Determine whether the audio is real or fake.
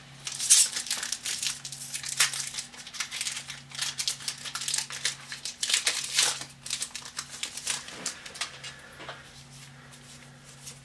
real